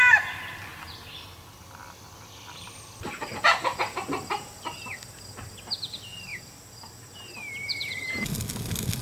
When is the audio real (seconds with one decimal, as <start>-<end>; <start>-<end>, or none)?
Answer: 0.0-9.0